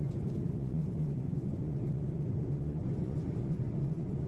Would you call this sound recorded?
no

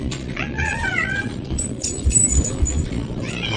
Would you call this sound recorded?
no